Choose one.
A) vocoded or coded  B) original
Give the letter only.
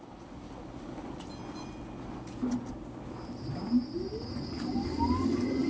B